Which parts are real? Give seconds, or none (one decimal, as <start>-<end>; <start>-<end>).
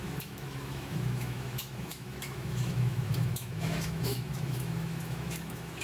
none